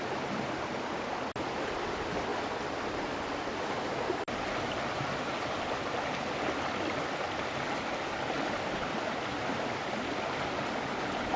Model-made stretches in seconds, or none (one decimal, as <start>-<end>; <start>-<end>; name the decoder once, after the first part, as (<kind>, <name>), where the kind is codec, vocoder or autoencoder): none